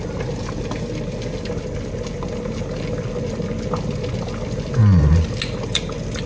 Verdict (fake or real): real